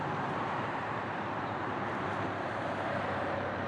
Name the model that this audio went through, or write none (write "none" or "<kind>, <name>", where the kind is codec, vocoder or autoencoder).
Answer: vocoder, BigVGAN v2